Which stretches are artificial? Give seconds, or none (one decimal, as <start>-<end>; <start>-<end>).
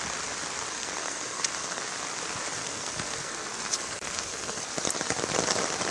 0.7-1.8; 2.6-4.6